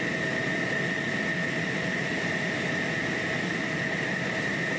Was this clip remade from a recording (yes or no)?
no